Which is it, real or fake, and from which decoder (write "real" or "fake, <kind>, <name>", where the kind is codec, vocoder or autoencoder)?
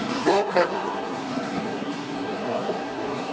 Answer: fake, codec, SNAC